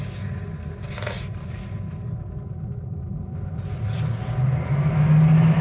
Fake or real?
real